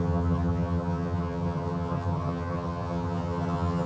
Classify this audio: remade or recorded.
remade